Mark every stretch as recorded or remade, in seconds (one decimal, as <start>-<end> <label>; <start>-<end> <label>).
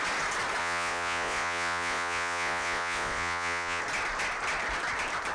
0.0-0.6 recorded; 0.6-3.8 remade; 3.8-5.3 recorded